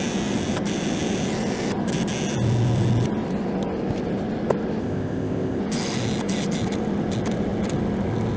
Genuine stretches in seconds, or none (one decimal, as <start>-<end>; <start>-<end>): 0.0-4.8; 5.6-8.4